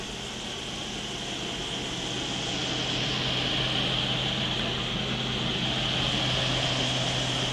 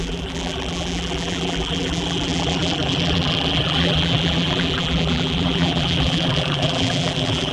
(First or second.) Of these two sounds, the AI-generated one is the second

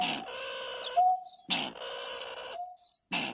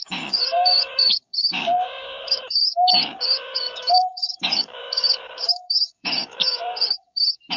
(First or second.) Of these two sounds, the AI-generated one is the second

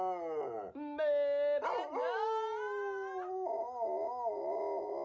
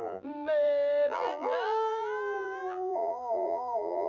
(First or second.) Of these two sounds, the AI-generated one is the second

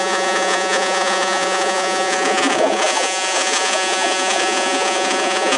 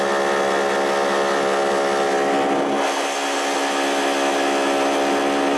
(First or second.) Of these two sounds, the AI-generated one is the first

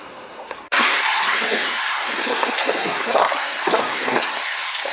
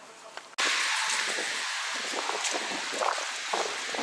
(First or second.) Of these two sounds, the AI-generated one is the first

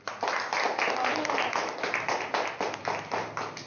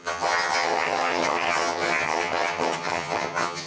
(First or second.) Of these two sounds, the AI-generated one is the second